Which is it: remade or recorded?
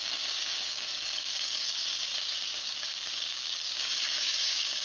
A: remade